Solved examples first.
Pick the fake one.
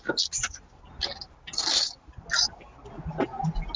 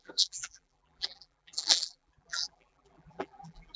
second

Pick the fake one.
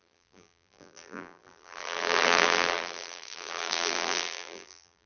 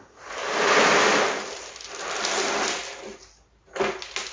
first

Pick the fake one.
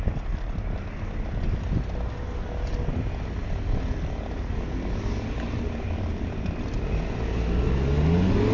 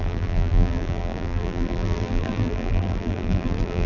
second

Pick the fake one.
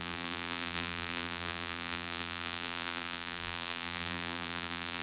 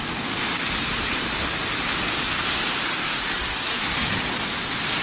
first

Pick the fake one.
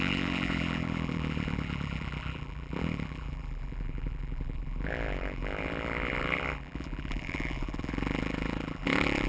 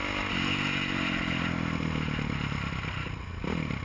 first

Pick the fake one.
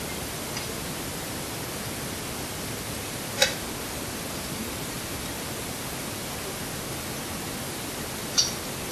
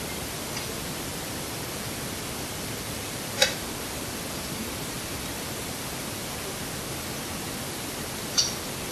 second